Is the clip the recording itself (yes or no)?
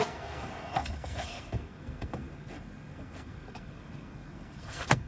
no